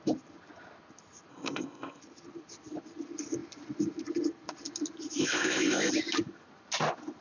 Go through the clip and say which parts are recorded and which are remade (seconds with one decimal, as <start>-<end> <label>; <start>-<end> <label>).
0.0-1.3 recorded; 1.3-2.0 remade; 2.0-5.2 recorded; 5.2-5.9 remade; 5.9-7.2 recorded